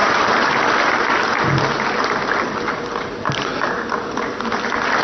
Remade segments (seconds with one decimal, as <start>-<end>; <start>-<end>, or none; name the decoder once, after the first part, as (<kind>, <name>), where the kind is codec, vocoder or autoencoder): 0.0-0.6 (vocoder, BigVGAN v2)